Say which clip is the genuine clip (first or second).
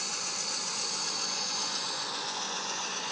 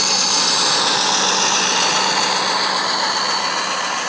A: second